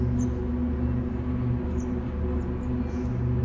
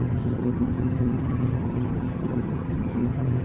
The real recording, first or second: first